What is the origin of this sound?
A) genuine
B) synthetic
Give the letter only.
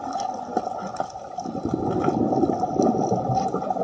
A